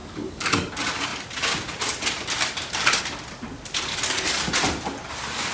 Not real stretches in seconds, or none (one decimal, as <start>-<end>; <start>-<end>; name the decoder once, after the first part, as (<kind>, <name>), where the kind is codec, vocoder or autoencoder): 0.0-0.7 (codec, DAC); 3.9-4.5